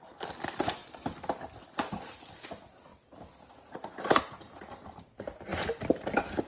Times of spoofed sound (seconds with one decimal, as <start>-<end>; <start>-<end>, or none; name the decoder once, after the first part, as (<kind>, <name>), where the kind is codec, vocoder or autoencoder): none